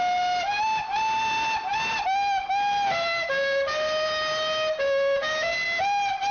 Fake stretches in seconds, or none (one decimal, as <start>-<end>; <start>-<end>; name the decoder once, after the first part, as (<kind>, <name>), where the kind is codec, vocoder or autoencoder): none